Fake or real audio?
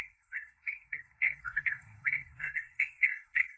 fake